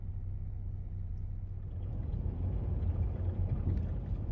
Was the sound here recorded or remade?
recorded